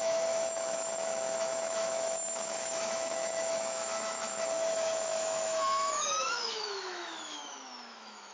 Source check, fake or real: fake